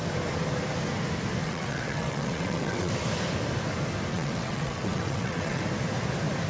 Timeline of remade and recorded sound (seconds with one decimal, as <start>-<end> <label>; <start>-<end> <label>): 0.0-1.4 recorded; 1.4-2.9 remade; 2.9-4.1 recorded; 4.1-5.6 remade; 5.6-6.5 recorded

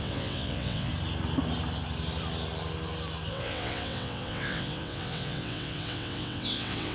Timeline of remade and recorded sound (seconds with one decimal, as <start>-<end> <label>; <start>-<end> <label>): 0.0-0.9 remade; 0.9-3.3 recorded; 3.3-6.9 remade